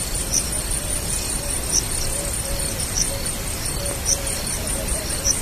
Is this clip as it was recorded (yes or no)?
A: no